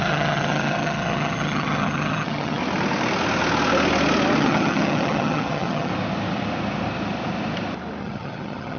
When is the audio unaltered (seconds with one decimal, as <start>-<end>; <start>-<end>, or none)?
2.6-4.4; 5.9-8.0